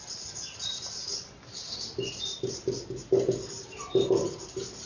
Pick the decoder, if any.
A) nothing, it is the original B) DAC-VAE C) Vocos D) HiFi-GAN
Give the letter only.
A